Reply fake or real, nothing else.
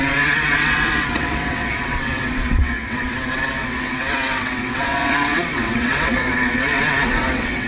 fake